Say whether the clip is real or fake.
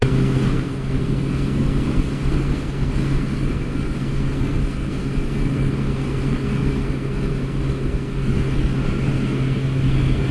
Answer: fake